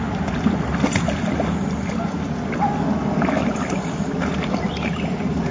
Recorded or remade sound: recorded